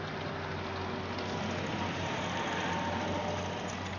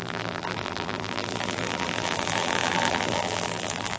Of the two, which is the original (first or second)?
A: first